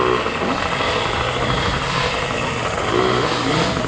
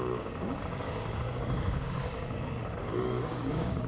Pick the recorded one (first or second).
first